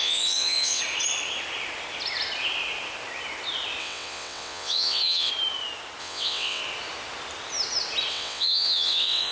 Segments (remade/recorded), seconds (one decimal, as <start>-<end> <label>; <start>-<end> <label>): 0.0-0.8 remade; 0.8-3.8 recorded; 3.8-5.3 remade; 5.3-6.0 recorded; 6.0-6.6 remade; 6.6-8.1 recorded; 8.1-9.3 remade